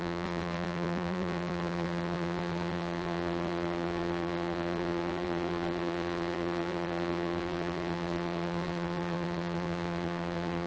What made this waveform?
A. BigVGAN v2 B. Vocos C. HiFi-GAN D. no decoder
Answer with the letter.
A